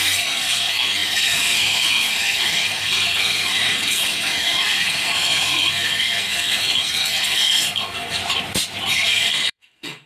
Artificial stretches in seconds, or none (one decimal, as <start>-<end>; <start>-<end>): 0.0-8.2; 8.9-10.1

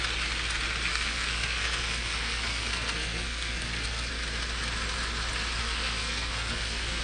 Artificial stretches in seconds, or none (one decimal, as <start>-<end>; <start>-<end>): 0.9-4.1; 5.6-7.0

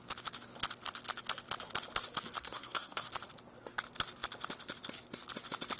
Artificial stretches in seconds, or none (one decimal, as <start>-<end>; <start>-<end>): 2.4-3.1

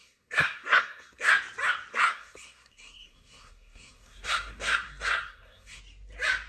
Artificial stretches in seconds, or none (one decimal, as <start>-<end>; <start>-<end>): 0.0-1.3; 1.9-5.8

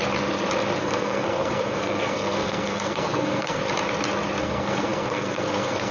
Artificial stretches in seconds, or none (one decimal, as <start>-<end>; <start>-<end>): 0.8-3.6; 4.4-5.9